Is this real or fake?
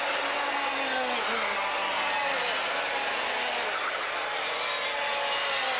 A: real